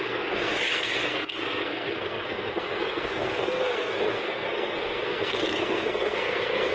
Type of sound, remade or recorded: remade